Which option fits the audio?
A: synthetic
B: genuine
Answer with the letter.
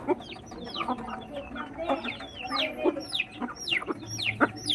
B